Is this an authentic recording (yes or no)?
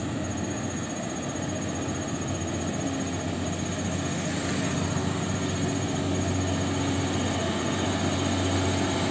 yes